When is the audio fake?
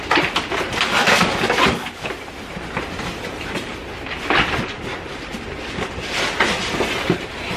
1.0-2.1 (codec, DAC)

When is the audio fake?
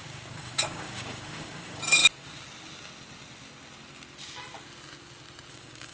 0.0-2.0 (codec, DAC); 5.5-5.9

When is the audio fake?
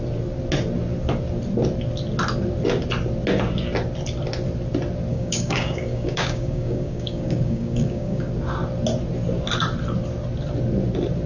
5.1-8.3 (codec, DAC)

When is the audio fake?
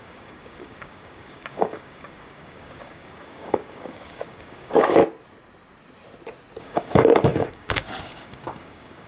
0.0-5.0 (codec, DAC); 6.6-9.1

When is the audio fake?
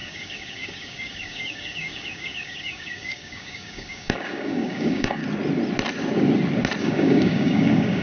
0.0-5.2 (codec, DAC); 6.8-8.0